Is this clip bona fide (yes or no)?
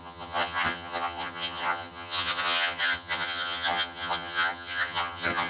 no